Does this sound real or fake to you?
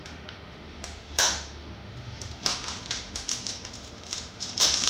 fake